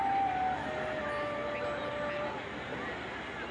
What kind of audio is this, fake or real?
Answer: real